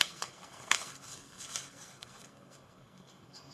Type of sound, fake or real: fake